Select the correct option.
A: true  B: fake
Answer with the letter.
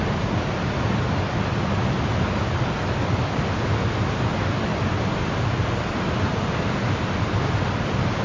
A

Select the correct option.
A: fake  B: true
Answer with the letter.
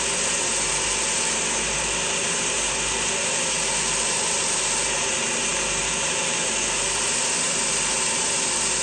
A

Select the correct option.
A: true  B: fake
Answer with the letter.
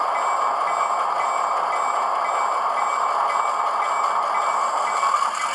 A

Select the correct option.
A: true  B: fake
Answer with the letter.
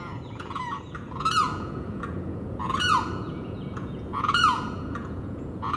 B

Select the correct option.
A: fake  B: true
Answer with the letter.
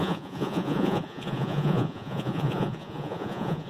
A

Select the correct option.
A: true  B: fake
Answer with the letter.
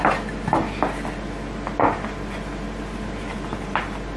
A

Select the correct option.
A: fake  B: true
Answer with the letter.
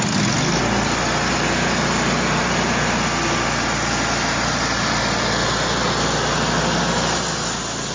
B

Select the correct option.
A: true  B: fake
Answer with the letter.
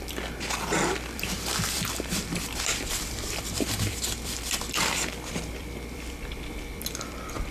B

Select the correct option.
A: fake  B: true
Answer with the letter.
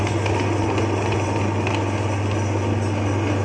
B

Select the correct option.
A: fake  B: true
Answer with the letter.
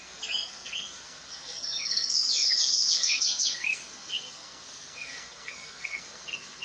A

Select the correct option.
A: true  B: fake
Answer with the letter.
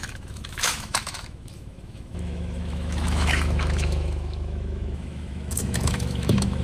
B